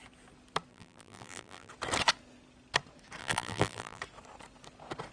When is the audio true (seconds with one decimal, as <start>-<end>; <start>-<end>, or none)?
0.0-0.7; 1.7-3.2; 4.0-5.1